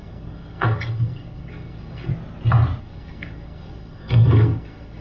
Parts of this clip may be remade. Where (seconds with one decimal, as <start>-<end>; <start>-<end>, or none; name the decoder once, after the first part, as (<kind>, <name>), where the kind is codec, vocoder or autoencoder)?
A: 0.0-2.1 (codec, SNAC); 2.8-5.0